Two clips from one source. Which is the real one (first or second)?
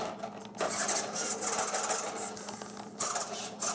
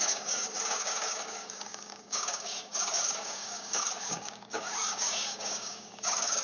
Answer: first